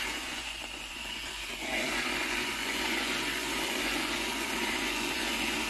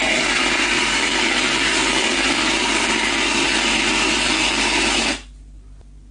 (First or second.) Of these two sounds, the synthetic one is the first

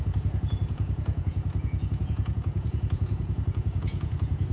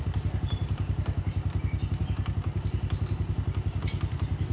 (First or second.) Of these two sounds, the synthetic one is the first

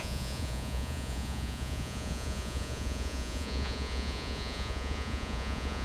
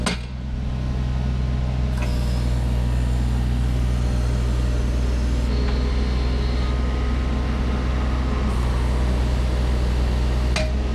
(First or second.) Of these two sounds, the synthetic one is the first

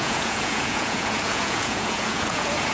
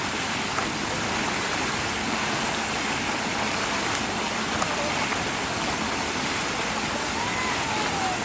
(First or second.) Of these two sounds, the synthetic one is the first